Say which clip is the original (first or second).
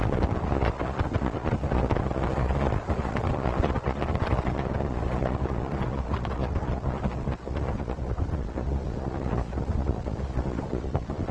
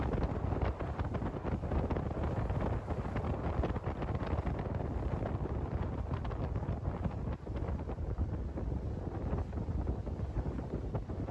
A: second